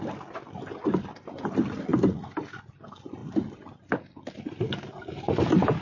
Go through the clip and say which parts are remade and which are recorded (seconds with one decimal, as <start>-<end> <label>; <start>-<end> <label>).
0.0-5.8 recorded

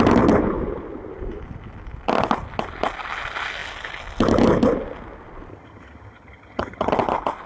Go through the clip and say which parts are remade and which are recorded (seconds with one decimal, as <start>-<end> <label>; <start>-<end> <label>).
0.0-5.5 recorded; 5.5-6.9 remade; 6.9-7.5 recorded